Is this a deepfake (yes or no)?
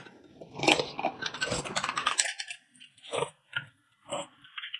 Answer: no